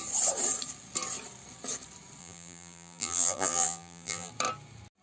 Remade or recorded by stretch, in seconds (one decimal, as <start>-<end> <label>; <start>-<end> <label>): 0.0-2.2 recorded; 2.2-4.3 remade; 4.3-5.0 recorded